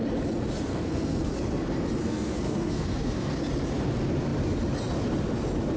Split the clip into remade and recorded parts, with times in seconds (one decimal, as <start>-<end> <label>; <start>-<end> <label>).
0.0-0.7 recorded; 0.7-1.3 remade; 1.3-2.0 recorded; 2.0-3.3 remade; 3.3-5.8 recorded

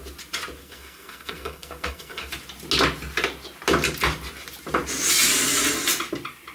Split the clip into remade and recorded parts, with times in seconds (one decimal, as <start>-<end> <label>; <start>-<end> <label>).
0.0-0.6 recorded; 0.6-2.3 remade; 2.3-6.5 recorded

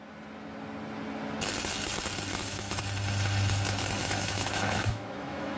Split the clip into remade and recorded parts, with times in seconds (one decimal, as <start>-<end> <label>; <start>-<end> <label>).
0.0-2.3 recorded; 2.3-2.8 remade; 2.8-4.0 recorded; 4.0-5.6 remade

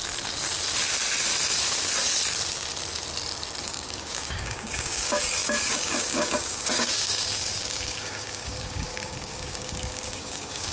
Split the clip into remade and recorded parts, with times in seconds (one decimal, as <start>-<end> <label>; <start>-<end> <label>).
0.0-3.6 recorded; 3.6-10.7 remade

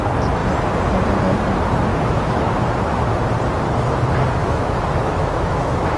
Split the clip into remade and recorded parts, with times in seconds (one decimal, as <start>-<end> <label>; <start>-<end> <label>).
0.0-1.9 recorded; 1.9-3.0 remade; 3.0-4.4 recorded; 4.4-6.0 remade

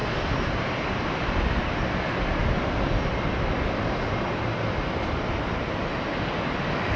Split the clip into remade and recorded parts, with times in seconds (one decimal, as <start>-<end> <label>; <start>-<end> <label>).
0.0-7.0 recorded